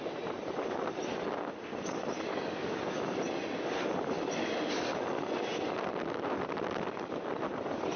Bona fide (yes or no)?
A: yes